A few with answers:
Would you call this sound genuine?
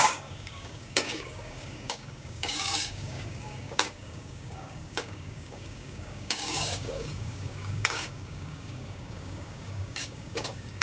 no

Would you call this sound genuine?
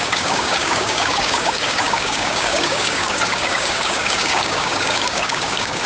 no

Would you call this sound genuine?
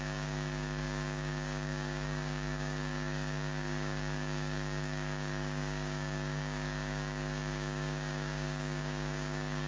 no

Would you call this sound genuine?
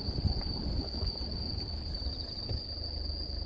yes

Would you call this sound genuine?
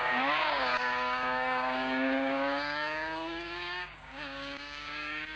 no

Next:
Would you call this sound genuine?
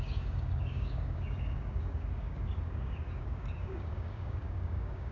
no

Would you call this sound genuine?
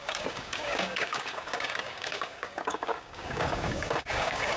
no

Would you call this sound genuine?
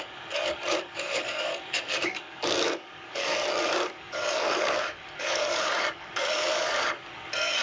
no